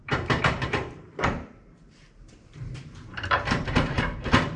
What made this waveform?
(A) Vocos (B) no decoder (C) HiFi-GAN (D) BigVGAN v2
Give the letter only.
D